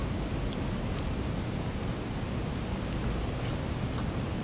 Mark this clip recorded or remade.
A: recorded